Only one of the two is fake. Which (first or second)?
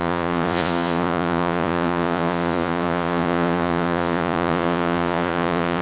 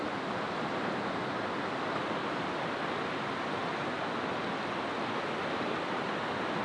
first